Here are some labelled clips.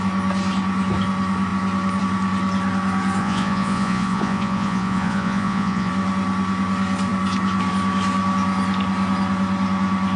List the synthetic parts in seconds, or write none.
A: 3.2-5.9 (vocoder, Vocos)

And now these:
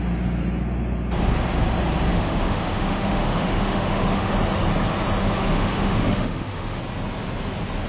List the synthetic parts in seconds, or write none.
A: 2.1-4.3 (autoencoder, DAC-VAE); 5.2-6.8

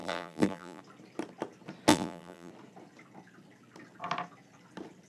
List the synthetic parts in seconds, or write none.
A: 0.0-0.8 (vocoder, BigVGAN v2); 1.9-2.5